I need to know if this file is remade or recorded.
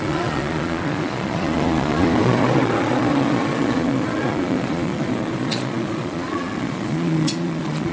remade